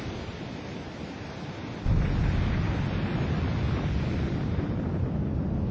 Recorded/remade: recorded